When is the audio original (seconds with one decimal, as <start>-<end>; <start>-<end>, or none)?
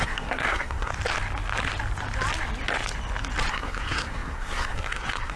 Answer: 0.9-3.5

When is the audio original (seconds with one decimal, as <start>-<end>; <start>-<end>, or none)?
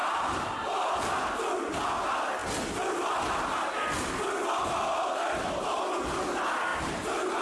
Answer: 0.9-6.7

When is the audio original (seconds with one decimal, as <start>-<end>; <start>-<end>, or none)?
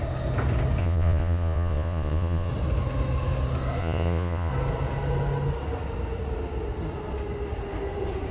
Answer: 0.0-0.8; 2.5-3.8; 4.5-8.3